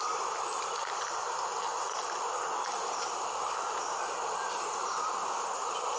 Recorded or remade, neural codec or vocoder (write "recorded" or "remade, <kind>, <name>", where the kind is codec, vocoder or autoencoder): recorded